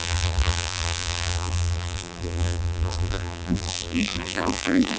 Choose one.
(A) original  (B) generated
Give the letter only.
B